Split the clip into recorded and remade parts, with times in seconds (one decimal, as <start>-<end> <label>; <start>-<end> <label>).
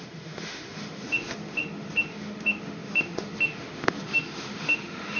0.0-5.2 remade